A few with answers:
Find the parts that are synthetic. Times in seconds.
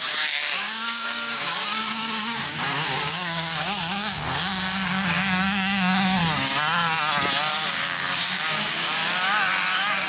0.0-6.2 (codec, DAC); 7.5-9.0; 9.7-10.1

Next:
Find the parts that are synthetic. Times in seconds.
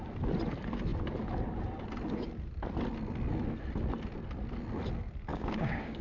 5.3-6.0 (codec, DAC)